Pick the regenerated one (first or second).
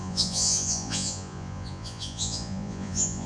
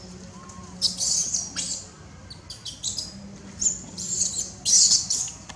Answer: first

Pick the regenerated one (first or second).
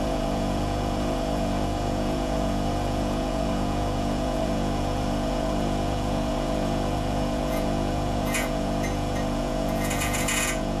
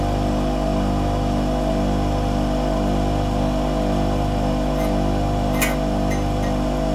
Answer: first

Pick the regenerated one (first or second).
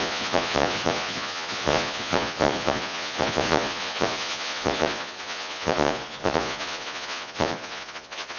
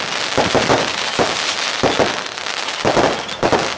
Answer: first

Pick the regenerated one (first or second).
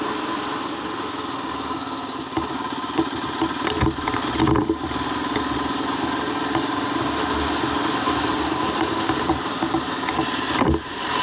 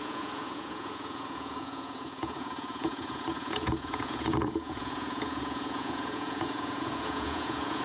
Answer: second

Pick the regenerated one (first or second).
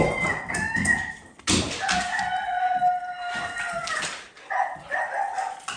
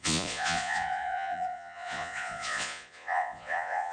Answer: second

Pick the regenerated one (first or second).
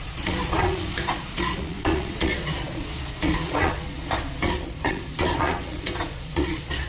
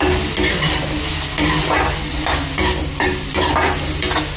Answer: first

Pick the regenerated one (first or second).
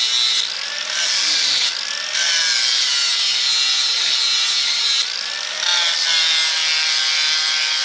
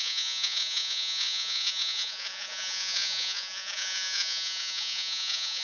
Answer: second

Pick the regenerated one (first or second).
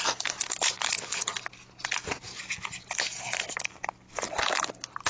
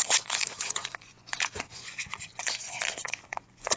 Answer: second